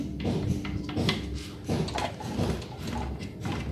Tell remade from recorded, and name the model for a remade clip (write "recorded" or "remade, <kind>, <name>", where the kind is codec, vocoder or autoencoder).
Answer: recorded